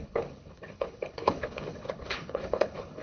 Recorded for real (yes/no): no